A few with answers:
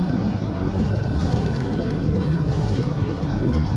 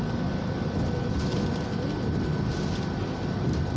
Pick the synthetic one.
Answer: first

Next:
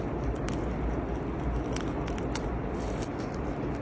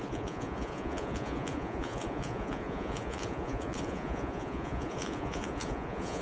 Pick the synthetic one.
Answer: second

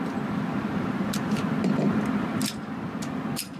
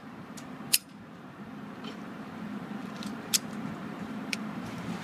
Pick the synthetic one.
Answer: second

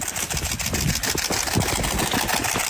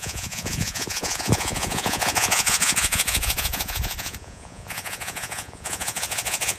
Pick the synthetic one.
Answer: second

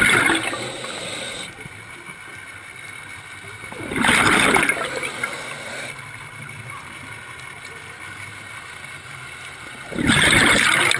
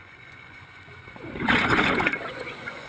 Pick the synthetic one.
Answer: second